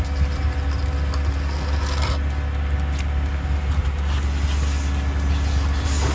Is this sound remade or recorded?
recorded